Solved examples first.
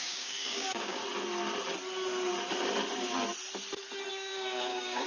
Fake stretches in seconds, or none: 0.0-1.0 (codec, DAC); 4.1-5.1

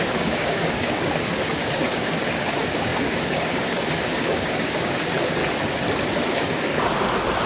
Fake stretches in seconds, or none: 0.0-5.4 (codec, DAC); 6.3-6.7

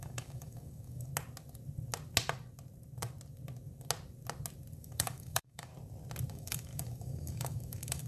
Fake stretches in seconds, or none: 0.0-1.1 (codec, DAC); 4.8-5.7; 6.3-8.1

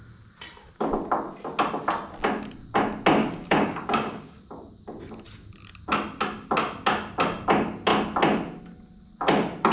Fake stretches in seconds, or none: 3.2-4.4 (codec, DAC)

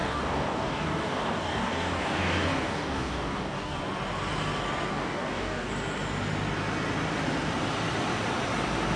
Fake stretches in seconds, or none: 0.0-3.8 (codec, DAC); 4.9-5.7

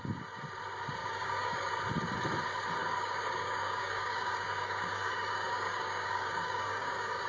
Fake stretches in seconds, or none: 1.0-1.7 (codec, DAC); 2.8-7.3

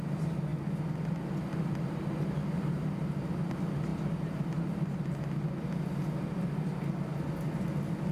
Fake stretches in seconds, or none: none